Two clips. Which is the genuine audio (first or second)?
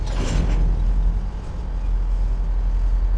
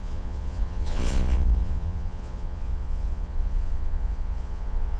first